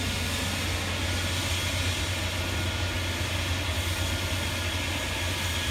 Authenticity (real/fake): real